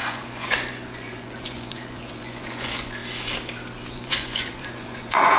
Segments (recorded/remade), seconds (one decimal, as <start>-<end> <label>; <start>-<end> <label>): 0.0-3.0 remade; 3.0-3.9 recorded; 3.9-5.4 remade